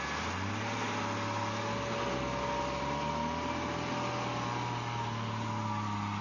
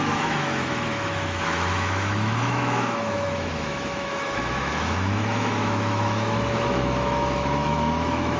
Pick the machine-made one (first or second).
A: second